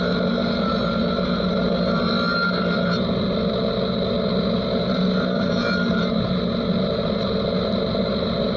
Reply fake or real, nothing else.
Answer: real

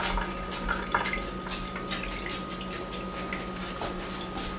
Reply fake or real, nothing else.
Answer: real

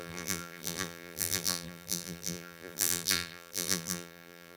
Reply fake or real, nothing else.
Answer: fake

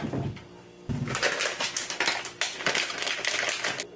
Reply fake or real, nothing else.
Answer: real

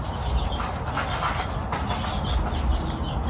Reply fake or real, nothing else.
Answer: real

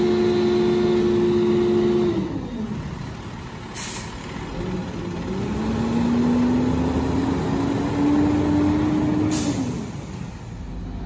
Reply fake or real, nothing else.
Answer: real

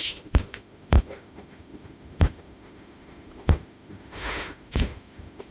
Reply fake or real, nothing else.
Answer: fake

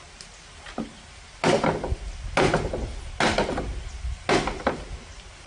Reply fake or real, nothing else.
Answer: real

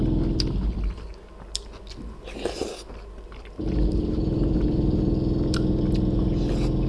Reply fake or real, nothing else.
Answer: real